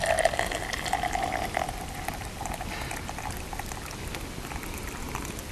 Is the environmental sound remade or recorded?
recorded